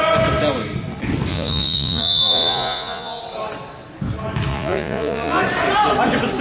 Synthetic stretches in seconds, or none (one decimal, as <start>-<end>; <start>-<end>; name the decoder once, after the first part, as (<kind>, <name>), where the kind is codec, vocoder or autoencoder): 1.3-3.2 (vocoder, Vocos); 4.5-5.4

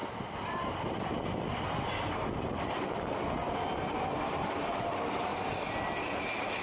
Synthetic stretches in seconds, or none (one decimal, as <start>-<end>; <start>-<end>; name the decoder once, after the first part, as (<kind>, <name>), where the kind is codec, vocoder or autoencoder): none